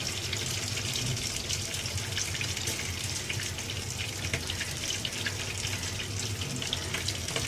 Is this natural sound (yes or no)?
yes